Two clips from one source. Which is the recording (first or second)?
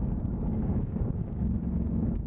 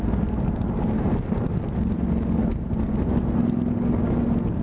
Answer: second